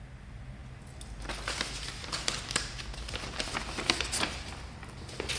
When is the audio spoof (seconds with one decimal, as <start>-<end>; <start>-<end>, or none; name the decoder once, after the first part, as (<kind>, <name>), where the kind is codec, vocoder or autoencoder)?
none